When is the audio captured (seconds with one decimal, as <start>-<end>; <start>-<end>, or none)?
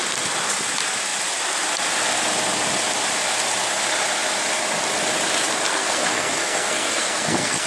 0.0-5.7